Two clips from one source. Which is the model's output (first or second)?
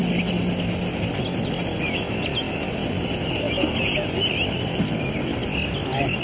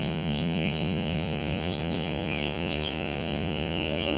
second